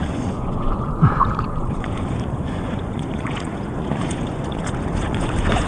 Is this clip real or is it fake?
fake